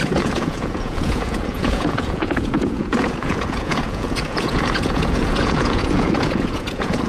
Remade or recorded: remade